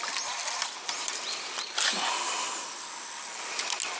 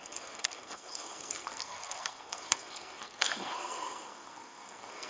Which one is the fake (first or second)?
second